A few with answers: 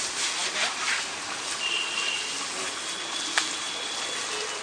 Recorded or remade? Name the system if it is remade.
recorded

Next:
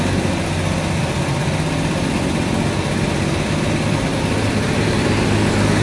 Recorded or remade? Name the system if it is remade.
recorded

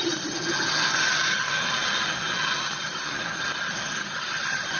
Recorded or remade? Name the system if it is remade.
recorded